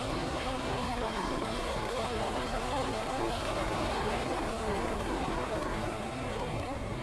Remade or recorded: remade